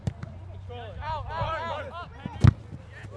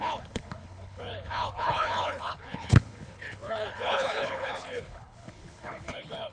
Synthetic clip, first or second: second